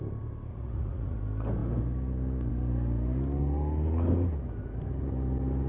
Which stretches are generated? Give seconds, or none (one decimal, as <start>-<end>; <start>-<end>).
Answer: 0.5-1.2